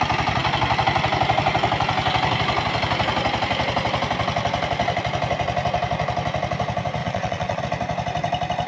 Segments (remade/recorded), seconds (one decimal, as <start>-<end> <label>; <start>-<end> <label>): 0.0-7.0 recorded; 7.0-7.6 remade; 7.6-8.7 recorded